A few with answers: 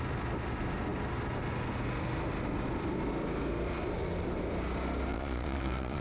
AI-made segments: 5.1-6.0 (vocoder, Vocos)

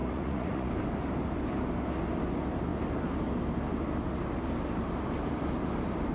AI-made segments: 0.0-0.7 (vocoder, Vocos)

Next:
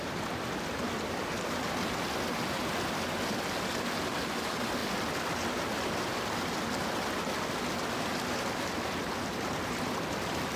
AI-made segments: none

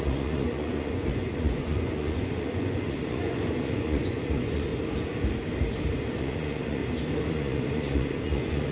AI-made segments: 0.0-4.7 (vocoder, Vocos); 6.2-6.8; 7.3-8.7

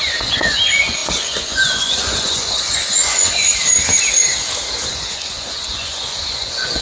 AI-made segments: 0.0-3.4 (vocoder, Vocos); 4.9-6.8

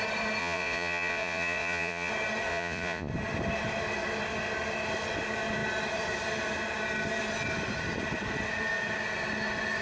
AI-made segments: 0.4-2.1 (vocoder, Vocos); 2.5-3.1